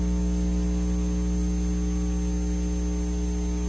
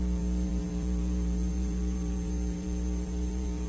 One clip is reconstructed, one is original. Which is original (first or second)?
first